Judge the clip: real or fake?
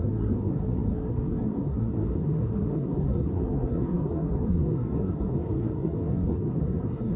fake